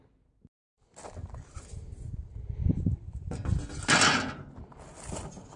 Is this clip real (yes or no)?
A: yes